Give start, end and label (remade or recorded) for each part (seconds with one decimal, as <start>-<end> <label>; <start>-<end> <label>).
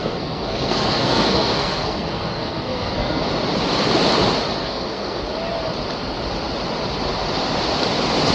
0.0-3.3 remade; 3.3-4.6 recorded; 4.6-5.2 remade; 5.2-8.3 recorded